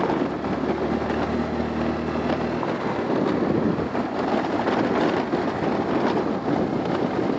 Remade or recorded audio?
recorded